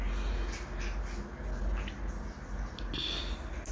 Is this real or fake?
real